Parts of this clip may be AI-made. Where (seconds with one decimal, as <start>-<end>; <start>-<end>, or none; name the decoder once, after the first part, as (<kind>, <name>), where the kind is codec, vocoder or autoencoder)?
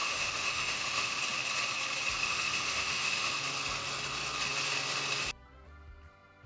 0.0-1.2 (autoencoder, DAC-VAE); 2.2-3.3